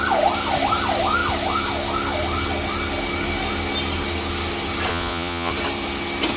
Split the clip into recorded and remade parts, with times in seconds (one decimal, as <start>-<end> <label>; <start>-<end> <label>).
0.0-4.9 recorded; 4.9-5.5 remade; 5.5-6.4 recorded